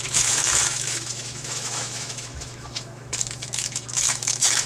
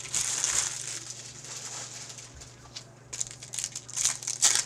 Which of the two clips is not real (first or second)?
first